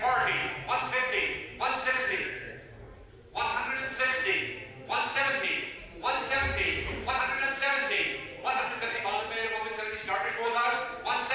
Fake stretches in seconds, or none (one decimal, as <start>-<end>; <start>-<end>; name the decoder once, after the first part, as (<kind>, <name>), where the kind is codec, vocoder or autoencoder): 1.5-2.3 (vocoder, BigVGAN v2)